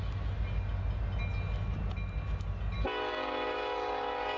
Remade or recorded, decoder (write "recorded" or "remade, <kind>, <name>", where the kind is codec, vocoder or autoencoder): recorded